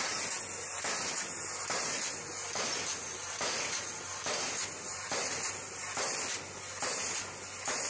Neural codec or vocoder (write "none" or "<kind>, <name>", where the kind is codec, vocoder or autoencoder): none